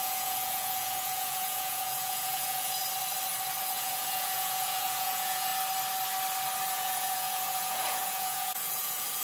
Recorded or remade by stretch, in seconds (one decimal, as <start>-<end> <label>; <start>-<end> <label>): 0.0-2.8 remade; 2.8-3.6 recorded; 3.6-5.5 remade; 5.5-6.7 recorded; 6.7-9.2 remade